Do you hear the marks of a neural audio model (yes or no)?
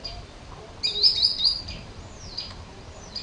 yes